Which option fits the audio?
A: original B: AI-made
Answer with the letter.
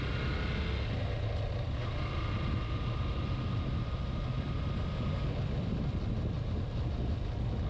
A